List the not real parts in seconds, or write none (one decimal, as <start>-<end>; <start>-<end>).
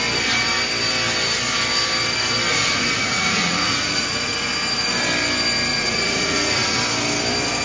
2.5-4.5; 5.7-6.8